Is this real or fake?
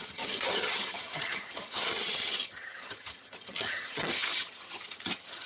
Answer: fake